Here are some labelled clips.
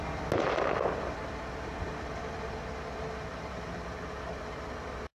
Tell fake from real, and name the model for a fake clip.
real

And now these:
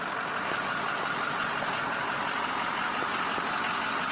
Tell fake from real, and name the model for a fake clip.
real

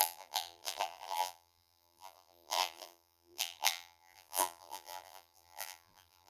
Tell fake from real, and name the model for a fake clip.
fake, vocoder, BigVGAN v2